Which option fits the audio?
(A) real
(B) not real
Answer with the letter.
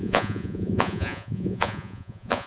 B